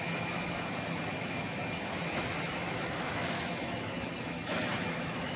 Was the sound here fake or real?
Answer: fake